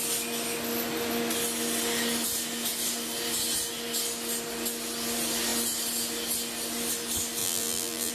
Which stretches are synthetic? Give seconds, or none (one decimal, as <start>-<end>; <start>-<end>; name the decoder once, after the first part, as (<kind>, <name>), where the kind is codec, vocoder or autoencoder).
7.4-8.1 (vocoder, BigVGAN v2)